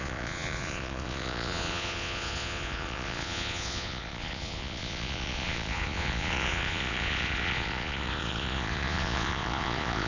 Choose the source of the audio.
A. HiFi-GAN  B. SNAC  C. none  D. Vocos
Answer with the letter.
D